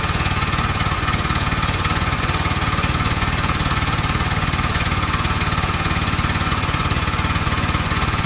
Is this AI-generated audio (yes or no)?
yes